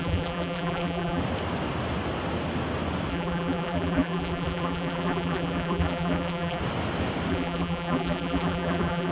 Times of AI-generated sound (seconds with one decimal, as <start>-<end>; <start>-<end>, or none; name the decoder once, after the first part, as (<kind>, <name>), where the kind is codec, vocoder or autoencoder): 0.0-1.2 (vocoder, BigVGAN v2); 3.1-6.6; 7.3-9.1